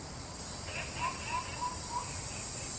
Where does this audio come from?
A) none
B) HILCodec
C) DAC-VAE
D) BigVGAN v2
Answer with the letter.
A